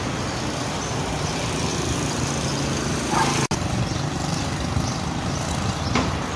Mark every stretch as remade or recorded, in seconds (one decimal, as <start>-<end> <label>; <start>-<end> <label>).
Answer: 0.0-6.4 recorded